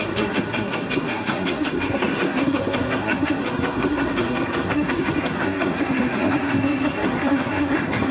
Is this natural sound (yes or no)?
no